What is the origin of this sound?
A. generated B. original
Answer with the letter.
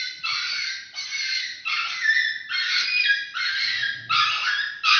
B